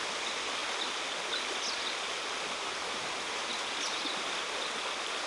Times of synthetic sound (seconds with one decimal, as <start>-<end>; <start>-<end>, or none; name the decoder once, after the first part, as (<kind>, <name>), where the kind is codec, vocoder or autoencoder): none